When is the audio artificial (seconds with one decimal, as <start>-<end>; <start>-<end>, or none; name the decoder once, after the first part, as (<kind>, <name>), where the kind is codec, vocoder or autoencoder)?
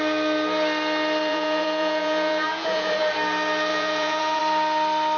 1.3-2.9 (vocoder, Vocos); 3.7-4.4